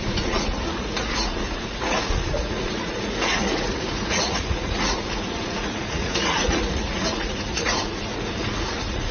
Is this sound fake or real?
fake